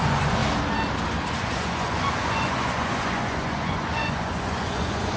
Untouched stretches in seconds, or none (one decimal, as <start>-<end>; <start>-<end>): 0.4-1.3